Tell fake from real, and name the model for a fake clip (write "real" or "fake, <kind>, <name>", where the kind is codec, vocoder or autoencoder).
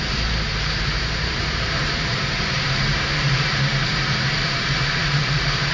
fake, vocoder, BigVGAN v2